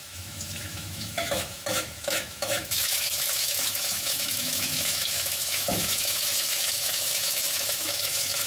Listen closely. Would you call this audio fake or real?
fake